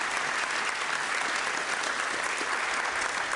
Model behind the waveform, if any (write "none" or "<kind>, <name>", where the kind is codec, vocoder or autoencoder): none